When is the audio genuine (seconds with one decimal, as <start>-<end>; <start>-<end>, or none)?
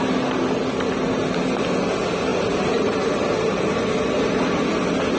0.0-2.3; 4.2-5.2